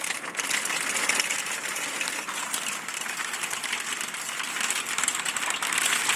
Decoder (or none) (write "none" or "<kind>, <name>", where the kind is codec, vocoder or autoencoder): none